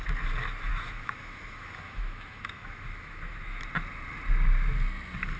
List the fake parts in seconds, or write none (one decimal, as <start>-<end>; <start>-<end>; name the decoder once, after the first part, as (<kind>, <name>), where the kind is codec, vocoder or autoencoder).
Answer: 0.7-3.6 (autoencoder, DAC-VAE)